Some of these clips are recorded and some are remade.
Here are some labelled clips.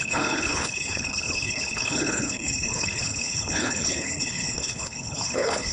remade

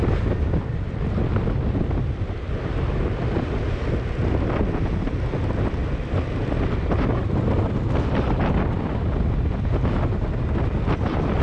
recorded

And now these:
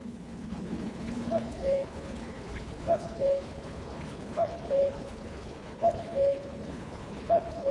remade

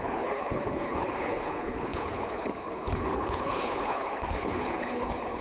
remade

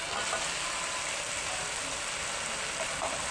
recorded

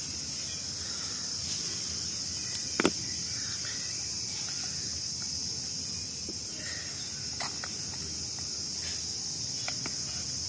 recorded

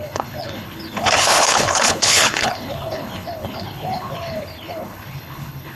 remade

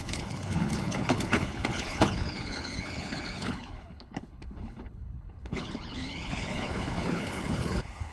remade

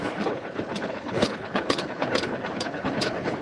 remade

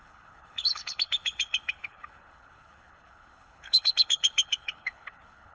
remade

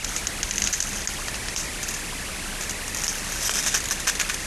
recorded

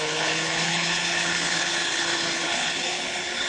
remade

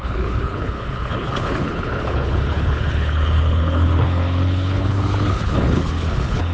remade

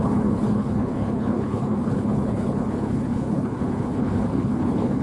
remade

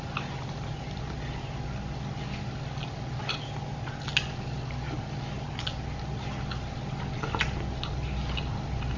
recorded